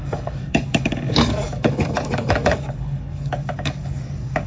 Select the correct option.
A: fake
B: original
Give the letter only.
A